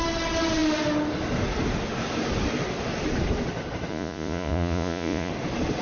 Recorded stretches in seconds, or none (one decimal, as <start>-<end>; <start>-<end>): 0.0-3.9; 5.3-5.8